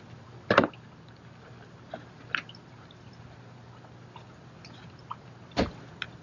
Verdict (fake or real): real